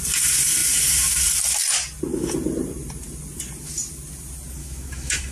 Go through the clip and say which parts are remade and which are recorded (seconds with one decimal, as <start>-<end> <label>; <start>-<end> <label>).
0.0-4.6 recorded; 4.6-5.3 remade